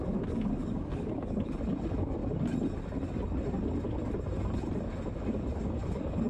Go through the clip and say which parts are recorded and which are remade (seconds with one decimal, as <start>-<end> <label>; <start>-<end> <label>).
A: 0.0-2.2 remade; 2.2-5.1 recorded; 5.1-6.3 remade